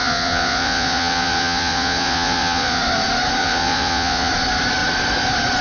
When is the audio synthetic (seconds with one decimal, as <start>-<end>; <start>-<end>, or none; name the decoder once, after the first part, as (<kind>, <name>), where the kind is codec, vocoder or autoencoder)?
0.0-2.8 (vocoder, Vocos); 3.4-4.3